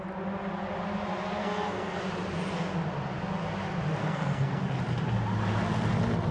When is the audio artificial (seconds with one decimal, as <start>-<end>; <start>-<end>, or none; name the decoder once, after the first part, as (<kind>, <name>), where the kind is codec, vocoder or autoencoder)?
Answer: 1.4-2.0 (codec, SNAC); 4.0-4.6